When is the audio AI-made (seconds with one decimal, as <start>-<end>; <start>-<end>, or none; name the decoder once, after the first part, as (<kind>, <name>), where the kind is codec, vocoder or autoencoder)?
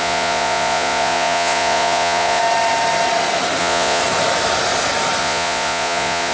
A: 0.0-2.4 (vocoder, Vocos); 3.6-4.0; 5.2-6.3